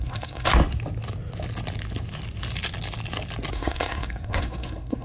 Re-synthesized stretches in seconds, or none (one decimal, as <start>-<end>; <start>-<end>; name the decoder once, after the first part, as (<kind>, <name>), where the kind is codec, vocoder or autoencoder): 0.0-0.5 (codec, SNAC); 3.5-5.0